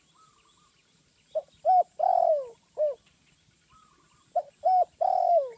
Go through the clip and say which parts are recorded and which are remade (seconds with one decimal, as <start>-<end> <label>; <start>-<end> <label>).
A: 0.0-5.6 recorded